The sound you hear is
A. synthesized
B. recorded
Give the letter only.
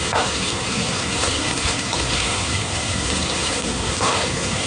A